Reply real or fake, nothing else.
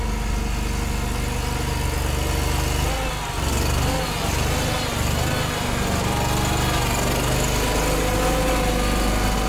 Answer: real